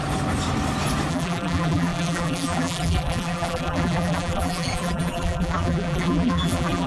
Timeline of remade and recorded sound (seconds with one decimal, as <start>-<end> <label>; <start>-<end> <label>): 0.0-1.1 recorded; 1.1-6.9 remade